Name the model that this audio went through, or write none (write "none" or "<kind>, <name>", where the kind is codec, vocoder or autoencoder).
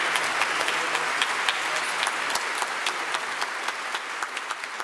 none